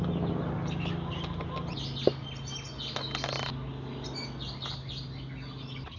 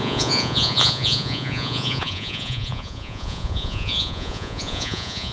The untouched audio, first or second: first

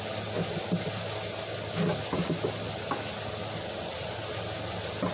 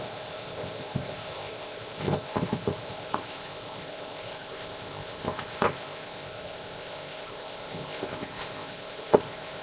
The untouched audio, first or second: first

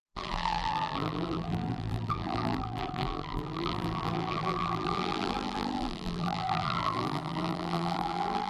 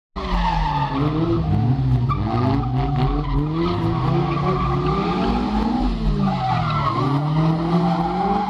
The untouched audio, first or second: second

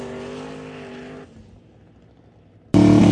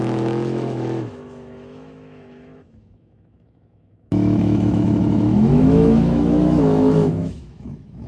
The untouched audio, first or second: first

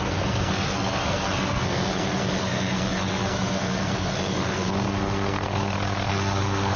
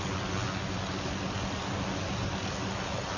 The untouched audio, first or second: second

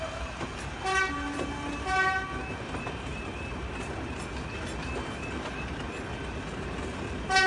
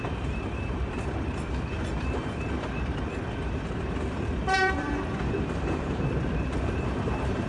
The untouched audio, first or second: first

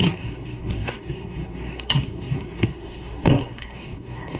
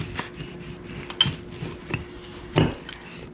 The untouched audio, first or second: second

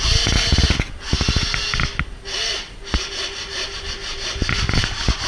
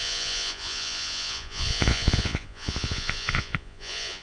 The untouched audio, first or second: first